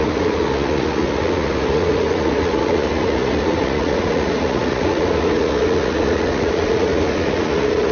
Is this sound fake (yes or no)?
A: yes